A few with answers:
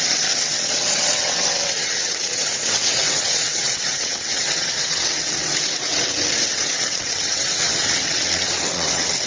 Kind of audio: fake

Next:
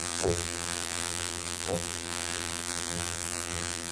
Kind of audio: fake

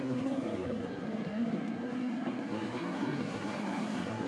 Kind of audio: fake